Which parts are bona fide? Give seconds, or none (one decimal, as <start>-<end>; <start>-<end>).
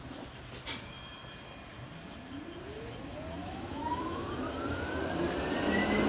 0.0-3.4; 4.3-6.1